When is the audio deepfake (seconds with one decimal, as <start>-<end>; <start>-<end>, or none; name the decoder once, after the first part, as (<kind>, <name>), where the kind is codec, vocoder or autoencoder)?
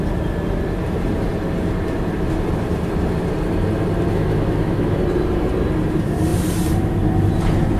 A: 4.1-5.0 (autoencoder, DAC-VAE)